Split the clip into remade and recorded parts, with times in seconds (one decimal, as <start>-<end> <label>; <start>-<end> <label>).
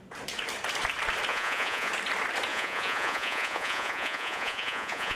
0.0-1.3 recorded; 1.3-1.9 remade; 1.9-2.5 recorded; 2.5-5.2 remade